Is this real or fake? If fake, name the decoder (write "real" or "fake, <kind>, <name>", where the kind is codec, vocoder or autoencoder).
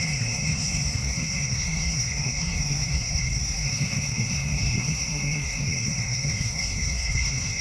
fake, codec, SNAC